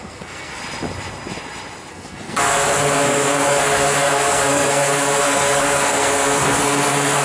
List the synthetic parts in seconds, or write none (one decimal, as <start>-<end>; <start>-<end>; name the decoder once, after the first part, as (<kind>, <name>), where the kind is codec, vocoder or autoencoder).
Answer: 0.0-0.6 (codec, SNAC); 1.9-7.2